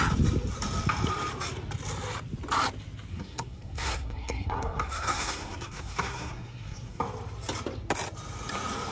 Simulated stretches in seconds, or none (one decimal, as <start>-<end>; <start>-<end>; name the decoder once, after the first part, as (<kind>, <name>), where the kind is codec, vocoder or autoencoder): 3.1-7.0 (codec, SNAC)